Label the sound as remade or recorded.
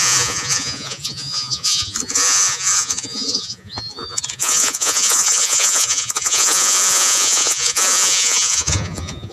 remade